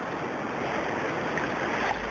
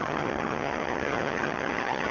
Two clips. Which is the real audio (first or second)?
first